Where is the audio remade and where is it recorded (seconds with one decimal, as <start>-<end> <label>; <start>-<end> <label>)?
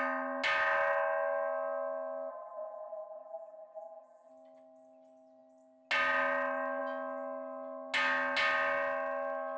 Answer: 0.0-2.3 recorded; 2.3-4.3 remade; 4.3-9.6 recorded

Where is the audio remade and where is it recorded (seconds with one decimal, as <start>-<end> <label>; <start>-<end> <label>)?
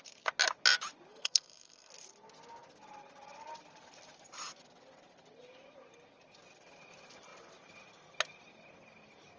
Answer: 0.0-1.1 recorded; 1.1-1.9 remade; 1.9-9.4 recorded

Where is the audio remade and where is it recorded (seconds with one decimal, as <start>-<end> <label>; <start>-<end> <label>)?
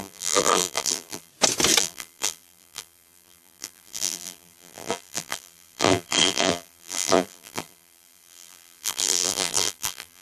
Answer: 0.0-1.3 remade; 1.3-1.8 recorded; 1.8-10.2 remade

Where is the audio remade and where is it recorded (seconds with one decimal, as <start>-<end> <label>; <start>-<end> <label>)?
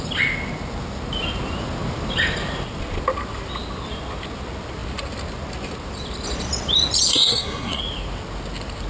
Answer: 0.0-7.1 recorded; 7.1-7.8 remade; 7.8-8.9 recorded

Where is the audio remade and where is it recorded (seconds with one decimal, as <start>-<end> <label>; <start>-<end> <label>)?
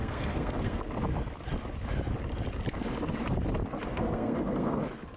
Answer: 0.0-0.8 remade; 0.8-3.9 recorded; 3.9-4.8 remade; 4.8-5.2 recorded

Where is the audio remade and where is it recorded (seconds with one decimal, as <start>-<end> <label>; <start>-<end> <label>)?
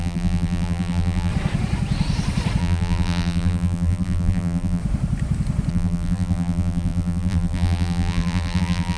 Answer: 0.0-1.3 remade; 1.3-2.6 recorded; 2.6-4.8 remade; 4.8-5.7 recorded; 5.7-9.0 remade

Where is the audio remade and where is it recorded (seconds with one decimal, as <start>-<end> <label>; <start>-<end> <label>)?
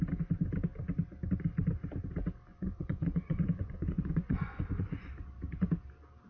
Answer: 0.0-2.5 recorded; 2.5-5.1 remade; 5.1-6.3 recorded